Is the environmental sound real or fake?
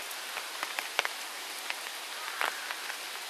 real